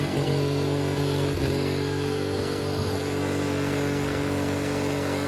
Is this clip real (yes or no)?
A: no